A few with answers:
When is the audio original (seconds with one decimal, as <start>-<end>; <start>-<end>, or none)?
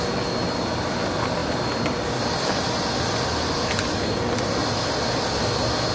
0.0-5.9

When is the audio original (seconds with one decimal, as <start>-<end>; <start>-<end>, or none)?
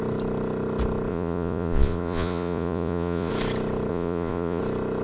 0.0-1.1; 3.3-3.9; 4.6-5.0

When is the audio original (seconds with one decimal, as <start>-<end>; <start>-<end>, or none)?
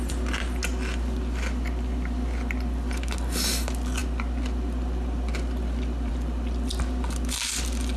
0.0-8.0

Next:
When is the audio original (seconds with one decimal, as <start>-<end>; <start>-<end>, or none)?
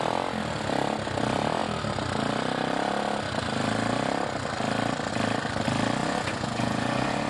0.0-6.0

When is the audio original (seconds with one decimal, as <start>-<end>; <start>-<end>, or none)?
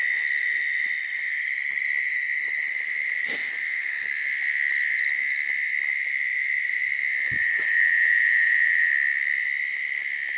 0.0-7.4; 8.9-10.4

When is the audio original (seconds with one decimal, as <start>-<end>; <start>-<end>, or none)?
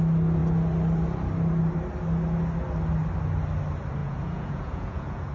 0.0-4.0